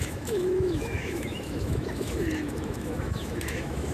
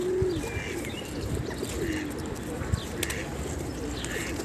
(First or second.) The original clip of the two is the second